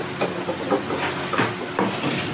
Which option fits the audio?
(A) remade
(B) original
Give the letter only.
B